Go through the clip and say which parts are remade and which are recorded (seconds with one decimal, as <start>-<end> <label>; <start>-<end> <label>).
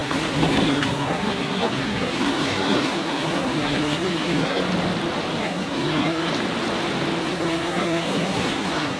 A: 0.0-4.6 remade; 4.6-5.4 recorded; 5.4-6.3 remade; 6.3-7.2 recorded; 7.2-9.0 remade